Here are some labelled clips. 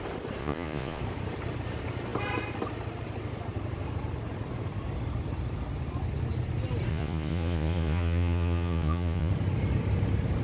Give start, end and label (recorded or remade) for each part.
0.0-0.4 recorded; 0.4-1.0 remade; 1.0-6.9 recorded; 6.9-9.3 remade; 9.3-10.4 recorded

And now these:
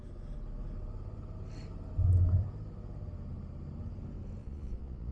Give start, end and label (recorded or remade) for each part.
0.0-4.4 recorded; 4.4-5.1 remade

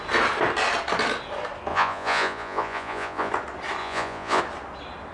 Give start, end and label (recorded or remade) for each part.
0.0-1.7 recorded; 1.7-3.3 remade; 3.3-3.8 recorded; 3.8-4.4 remade; 4.4-5.1 recorded